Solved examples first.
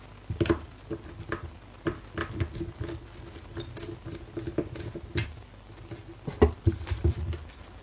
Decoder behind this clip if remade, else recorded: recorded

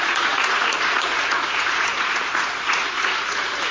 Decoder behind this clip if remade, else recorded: remade, vocoder, Vocos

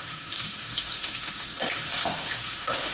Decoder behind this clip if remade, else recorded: remade, autoencoder, DAC-VAE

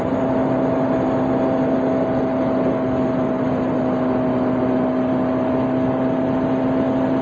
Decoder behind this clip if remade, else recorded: recorded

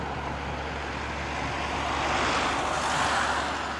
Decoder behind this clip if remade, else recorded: recorded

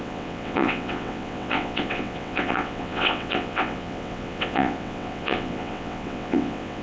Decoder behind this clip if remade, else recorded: remade, vocoder, WaveNeXt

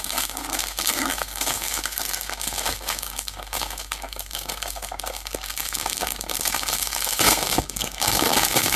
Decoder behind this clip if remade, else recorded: remade, codec, SNAC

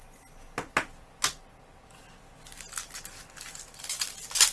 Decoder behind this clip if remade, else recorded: recorded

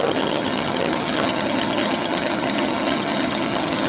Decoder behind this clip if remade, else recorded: remade, vocoder, HiFi-GAN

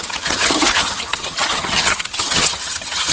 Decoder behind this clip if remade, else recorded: remade, vocoder, HiFi-GAN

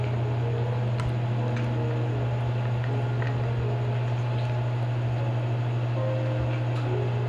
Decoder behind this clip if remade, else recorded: recorded